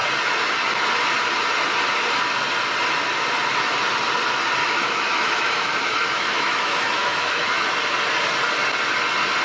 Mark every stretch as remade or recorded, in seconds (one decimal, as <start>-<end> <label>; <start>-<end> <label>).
0.0-4.6 recorded; 4.6-7.7 remade; 7.7-9.4 recorded